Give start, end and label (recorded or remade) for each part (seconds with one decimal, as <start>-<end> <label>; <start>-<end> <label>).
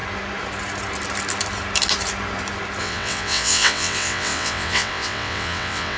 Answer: 0.0-2.8 recorded; 2.8-6.0 remade